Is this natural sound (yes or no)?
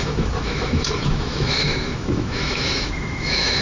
no